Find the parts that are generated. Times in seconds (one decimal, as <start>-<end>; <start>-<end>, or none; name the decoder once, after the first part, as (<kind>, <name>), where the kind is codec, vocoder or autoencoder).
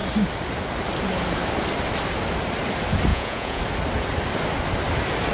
3.1-3.6 (vocoder, Vocos)